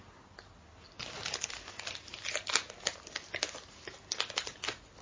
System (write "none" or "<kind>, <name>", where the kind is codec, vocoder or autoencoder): none